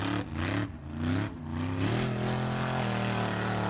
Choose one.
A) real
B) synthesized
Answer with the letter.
A